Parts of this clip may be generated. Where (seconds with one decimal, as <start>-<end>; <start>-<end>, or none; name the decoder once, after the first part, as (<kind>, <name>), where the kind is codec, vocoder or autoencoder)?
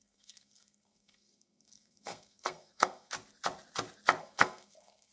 0.0-3.1 (codec, SNAC); 4.2-5.1